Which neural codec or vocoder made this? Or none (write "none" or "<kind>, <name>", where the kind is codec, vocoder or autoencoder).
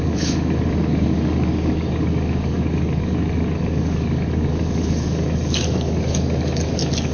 codec, DAC